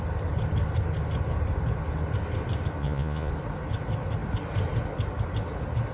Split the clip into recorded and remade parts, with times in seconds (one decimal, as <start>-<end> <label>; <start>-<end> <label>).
0.0-2.8 recorded; 2.8-3.3 remade; 3.3-5.9 recorded